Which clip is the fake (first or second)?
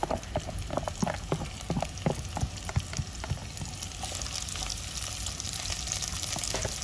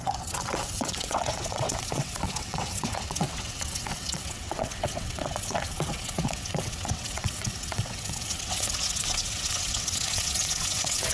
second